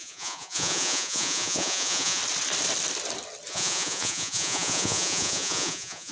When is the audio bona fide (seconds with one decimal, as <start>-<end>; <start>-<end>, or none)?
2.2-3.5